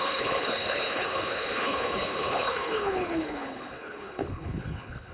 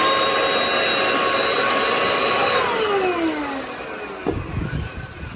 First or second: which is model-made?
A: first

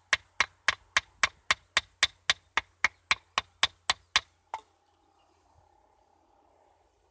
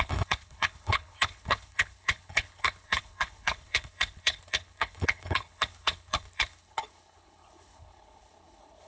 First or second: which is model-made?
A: second